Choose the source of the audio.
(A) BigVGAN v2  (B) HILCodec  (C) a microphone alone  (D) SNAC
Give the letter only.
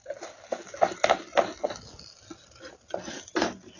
C